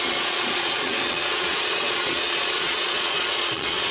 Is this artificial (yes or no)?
yes